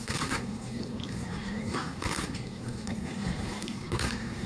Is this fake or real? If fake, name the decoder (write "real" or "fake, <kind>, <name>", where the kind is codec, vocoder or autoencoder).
fake, codec, SNAC